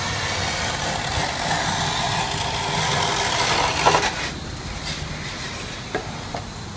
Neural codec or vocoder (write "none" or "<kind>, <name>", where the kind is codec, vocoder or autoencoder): none